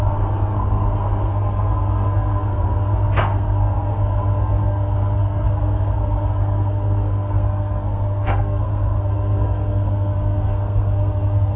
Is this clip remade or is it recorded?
remade